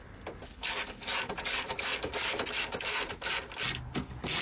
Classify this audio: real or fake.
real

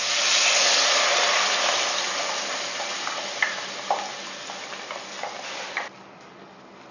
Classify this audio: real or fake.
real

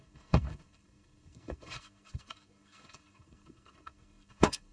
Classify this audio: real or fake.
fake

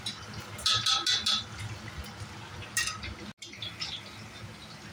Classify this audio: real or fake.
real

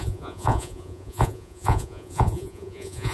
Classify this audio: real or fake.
fake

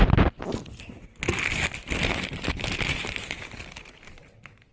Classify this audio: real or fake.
real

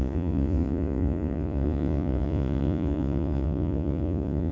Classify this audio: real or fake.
fake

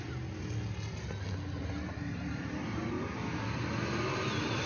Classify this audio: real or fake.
real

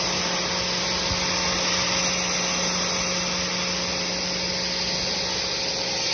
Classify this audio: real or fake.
real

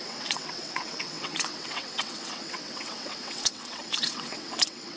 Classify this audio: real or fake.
fake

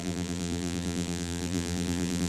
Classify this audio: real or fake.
fake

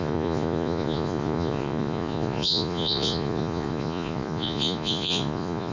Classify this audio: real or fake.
fake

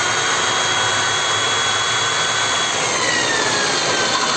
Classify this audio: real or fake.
real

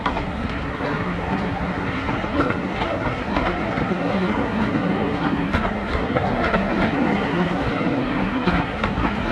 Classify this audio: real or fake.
fake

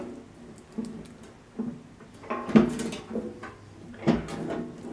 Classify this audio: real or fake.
real